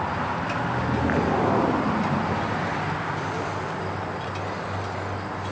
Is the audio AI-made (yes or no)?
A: no